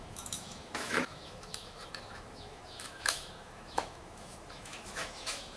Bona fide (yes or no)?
no